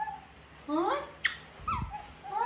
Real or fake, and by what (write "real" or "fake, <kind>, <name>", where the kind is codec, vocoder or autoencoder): real